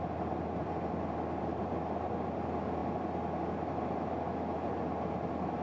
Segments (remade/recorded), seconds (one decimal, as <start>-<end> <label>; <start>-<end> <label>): 0.0-0.6 recorded; 0.6-1.6 remade; 1.6-5.6 recorded